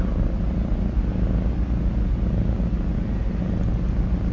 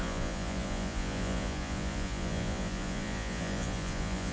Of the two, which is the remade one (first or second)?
second